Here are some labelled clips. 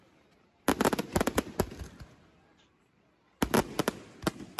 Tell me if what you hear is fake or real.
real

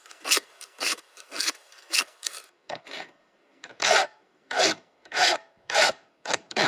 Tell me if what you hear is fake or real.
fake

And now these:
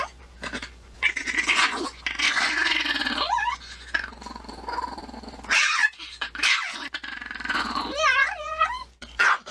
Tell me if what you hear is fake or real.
fake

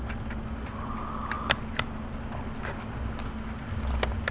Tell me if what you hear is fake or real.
real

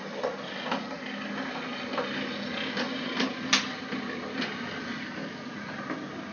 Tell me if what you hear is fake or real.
real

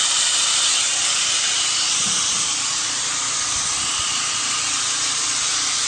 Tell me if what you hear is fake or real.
real